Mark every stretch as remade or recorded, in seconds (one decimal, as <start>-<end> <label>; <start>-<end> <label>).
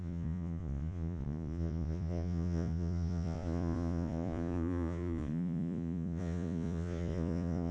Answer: 0.0-7.7 remade